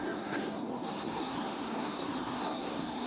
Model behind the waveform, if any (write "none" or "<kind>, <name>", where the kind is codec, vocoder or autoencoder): codec, SNAC